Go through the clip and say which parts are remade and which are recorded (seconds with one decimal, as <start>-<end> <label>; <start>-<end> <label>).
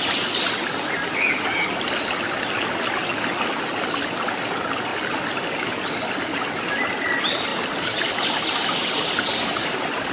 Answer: 0.0-10.1 recorded